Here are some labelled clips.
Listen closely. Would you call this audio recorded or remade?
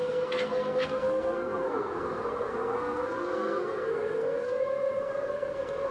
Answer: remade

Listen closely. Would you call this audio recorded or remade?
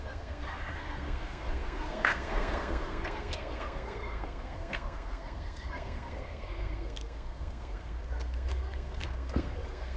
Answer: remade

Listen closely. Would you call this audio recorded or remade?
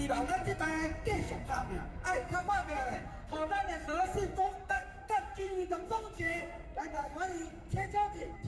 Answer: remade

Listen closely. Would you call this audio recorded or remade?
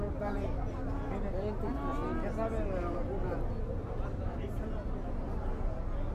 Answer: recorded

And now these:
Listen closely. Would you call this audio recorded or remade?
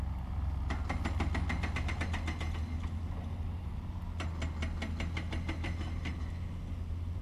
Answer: recorded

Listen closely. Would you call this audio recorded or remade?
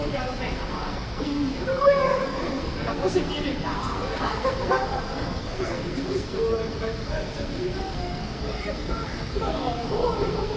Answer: remade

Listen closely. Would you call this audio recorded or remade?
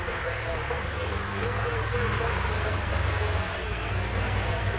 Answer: remade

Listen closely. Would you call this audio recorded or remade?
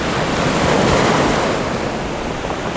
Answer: recorded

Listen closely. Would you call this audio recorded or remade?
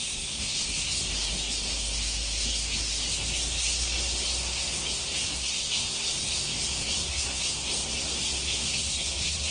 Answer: remade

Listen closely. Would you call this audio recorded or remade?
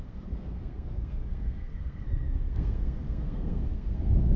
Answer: remade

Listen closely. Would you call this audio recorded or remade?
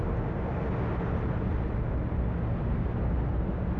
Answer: recorded